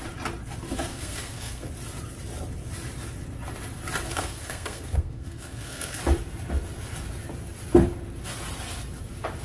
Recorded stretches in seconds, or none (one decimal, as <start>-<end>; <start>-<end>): 0.0-0.9; 1.7-4.1; 6.0-9.4